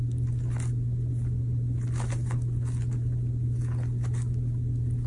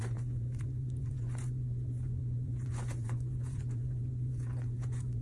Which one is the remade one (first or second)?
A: second